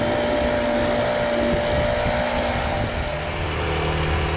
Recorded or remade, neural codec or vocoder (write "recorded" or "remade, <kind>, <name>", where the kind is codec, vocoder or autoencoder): recorded